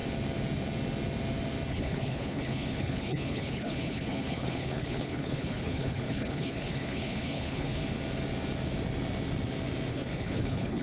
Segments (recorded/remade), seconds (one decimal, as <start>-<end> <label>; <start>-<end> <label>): 0.0-1.7 recorded; 1.7-7.8 remade; 7.8-9.9 recorded; 9.9-10.8 remade